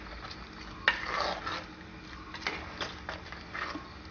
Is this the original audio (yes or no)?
yes